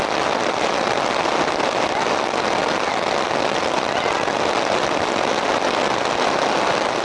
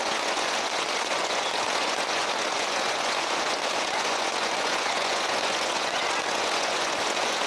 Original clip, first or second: first